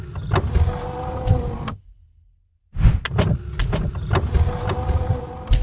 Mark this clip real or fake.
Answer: real